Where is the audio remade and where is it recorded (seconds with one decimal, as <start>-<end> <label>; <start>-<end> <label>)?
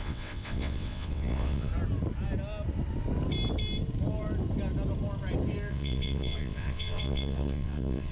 0.0-1.7 remade; 1.7-5.7 recorded; 5.7-8.1 remade